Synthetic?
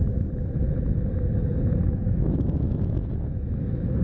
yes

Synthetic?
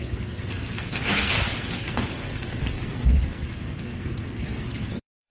yes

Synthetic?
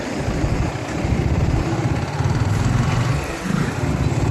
yes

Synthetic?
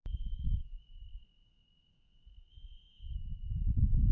yes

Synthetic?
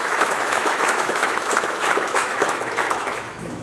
yes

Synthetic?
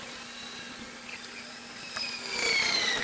no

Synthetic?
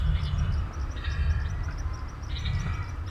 no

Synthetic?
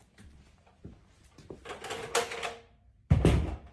no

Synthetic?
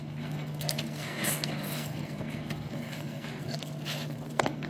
yes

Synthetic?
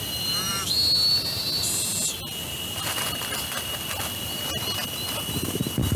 yes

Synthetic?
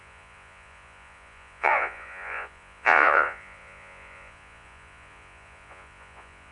yes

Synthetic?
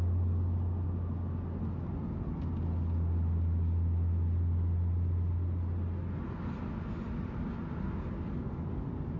no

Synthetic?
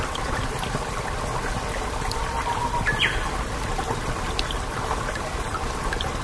no